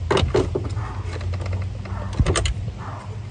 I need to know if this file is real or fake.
real